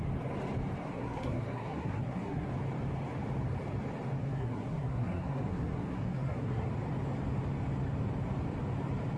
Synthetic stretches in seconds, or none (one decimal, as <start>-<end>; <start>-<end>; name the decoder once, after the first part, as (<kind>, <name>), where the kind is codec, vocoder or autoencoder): 0.8-2.5 (codec, SNAC); 4.2-6.7